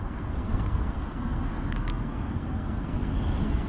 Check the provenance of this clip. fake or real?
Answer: fake